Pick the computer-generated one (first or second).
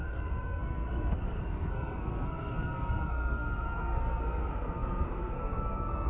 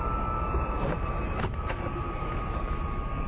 first